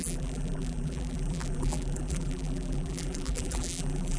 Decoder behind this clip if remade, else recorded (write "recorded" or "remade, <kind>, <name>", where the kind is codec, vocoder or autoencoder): remade, vocoder, BigVGAN v2